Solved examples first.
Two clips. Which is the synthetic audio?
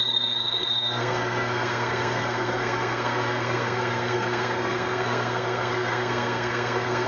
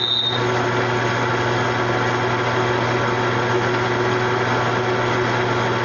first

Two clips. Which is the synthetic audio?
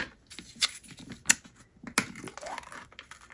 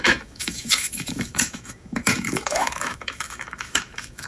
second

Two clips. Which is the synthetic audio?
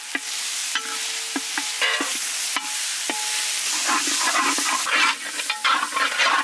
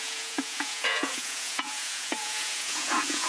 second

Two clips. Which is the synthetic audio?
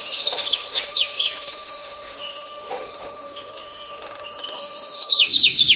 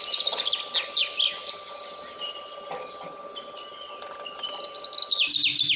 first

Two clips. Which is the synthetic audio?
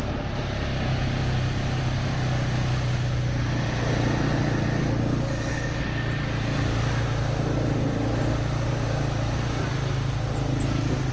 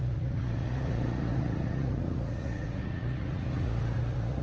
second